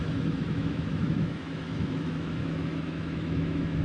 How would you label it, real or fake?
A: fake